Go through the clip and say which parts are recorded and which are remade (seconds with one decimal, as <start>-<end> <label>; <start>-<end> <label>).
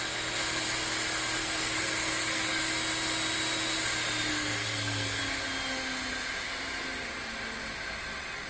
0.0-1.4 recorded; 1.4-2.6 remade; 2.6-4.3 recorded; 4.3-5.2 remade; 5.2-8.5 recorded